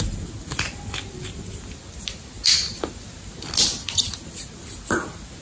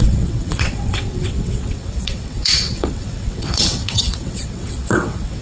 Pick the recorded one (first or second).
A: first